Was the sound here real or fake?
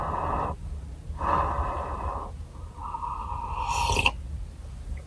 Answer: real